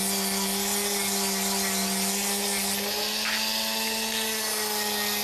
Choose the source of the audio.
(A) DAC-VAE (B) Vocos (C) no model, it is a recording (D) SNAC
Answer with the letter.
C